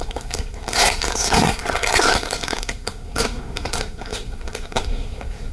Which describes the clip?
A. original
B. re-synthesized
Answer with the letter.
B